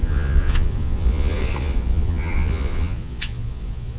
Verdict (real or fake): fake